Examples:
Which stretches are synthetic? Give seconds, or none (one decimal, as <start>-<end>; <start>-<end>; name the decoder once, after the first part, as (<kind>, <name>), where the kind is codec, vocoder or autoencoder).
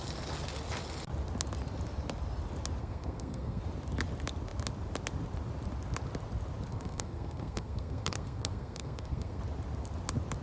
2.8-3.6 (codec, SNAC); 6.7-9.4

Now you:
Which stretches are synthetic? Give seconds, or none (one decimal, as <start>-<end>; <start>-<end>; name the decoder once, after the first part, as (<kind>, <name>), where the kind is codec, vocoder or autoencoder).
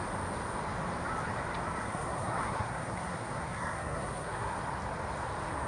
1.8-4.6 (codec, SNAC)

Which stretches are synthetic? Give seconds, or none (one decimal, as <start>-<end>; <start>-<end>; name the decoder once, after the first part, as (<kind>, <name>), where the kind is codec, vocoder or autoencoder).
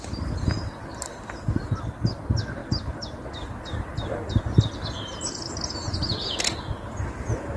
5.8-6.6 (vocoder, Vocos)